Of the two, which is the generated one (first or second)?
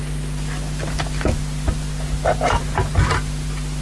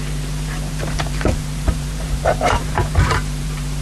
second